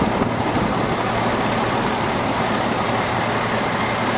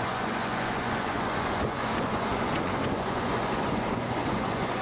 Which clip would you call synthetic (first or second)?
second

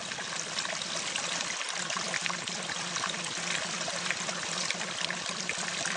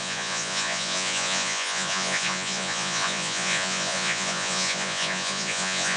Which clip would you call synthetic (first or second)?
second